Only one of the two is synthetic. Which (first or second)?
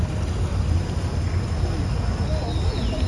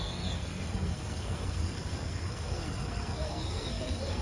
second